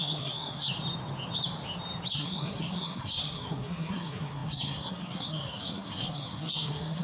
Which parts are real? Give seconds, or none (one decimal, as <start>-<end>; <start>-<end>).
0.7-2.1